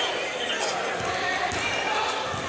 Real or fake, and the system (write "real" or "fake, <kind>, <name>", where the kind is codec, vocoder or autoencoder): real